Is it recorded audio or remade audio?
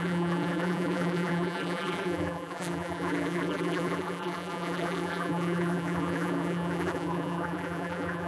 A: remade